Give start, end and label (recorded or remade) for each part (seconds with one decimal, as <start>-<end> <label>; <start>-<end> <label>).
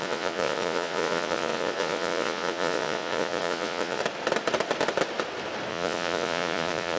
0.0-4.0 remade; 4.0-5.7 recorded; 5.7-7.0 remade